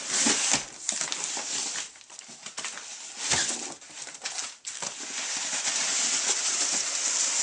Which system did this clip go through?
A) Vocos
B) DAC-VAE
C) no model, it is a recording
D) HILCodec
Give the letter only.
C